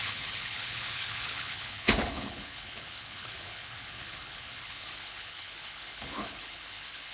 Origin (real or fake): fake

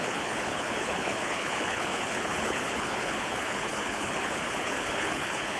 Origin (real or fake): fake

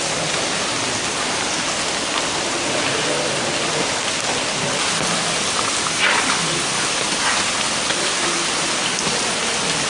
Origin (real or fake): real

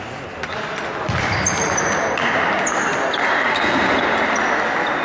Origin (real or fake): real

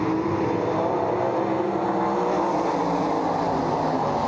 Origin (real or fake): real